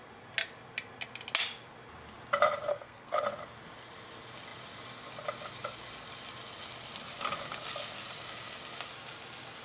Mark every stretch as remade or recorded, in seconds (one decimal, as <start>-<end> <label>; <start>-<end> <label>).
0.0-2.7 recorded; 2.7-3.2 remade; 3.2-9.6 recorded